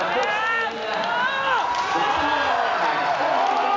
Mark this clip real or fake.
real